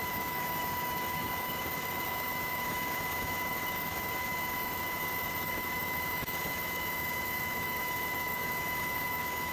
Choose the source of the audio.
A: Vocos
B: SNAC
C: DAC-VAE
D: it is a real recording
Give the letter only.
C